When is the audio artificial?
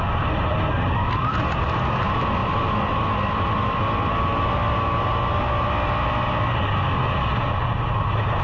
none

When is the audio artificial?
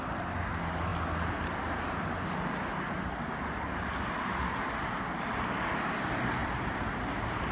none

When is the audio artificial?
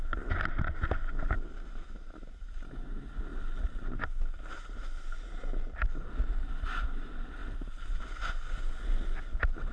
7.4-8.0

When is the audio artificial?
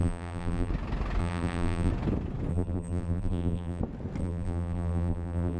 0.0-0.7; 1.2-1.9; 2.5-3.8; 4.2-5.6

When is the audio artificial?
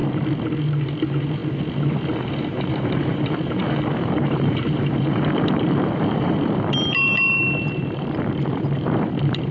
0.6-1.4; 2.7-9.5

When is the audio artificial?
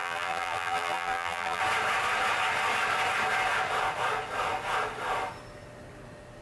0.0-1.6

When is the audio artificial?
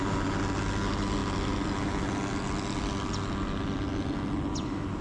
none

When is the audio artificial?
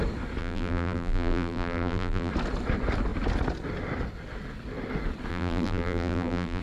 0.4-2.3; 5.3-6.6